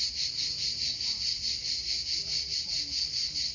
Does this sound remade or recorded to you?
recorded